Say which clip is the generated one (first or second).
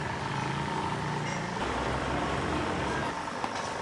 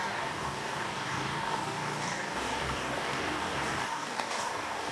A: second